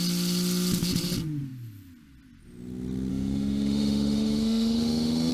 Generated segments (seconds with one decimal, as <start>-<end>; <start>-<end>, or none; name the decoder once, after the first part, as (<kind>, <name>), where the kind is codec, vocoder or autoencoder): 3.1-5.3 (autoencoder, DAC-VAE)